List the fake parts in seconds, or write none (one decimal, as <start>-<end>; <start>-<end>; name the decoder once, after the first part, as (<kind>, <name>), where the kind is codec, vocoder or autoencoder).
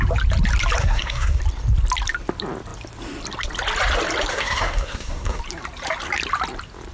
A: 0.8-1.4 (codec, SNAC); 4.3-5.4